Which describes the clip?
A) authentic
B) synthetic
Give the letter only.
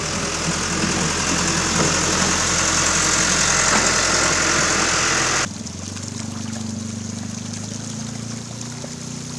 A